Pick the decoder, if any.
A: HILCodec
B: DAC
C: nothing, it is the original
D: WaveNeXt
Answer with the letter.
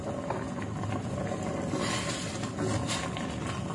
C